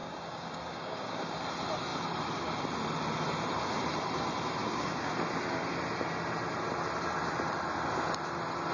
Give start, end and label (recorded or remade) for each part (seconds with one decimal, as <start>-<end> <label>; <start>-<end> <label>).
0.0-1.4 remade; 1.4-4.6 recorded; 4.6-5.1 remade; 5.1-8.7 recorded